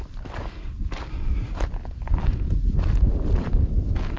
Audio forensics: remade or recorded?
recorded